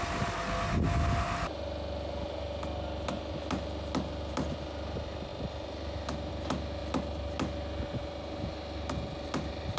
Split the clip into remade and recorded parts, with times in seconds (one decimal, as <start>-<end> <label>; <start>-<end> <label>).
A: 0.0-9.8 recorded